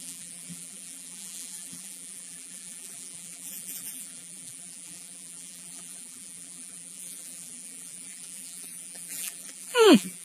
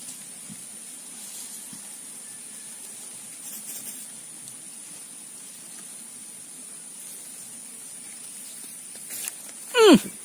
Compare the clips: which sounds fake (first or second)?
first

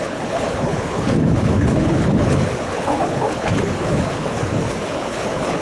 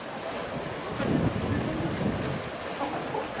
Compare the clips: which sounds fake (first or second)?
first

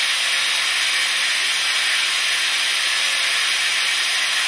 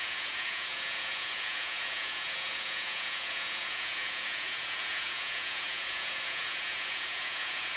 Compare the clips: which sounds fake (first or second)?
second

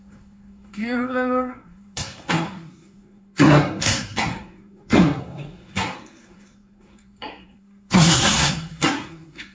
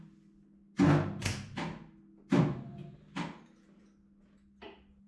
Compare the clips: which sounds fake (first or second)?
first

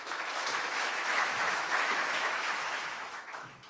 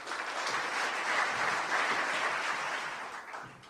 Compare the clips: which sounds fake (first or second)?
first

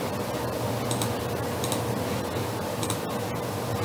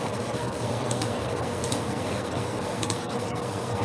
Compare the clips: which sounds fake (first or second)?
second